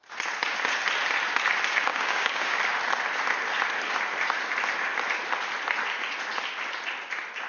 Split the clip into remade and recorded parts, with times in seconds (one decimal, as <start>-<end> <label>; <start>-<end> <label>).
0.0-1.9 recorded; 1.9-2.6 remade; 2.6-7.5 recorded